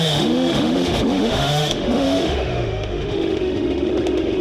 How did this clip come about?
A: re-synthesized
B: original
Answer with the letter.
A